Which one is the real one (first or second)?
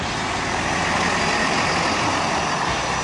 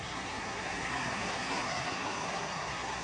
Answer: first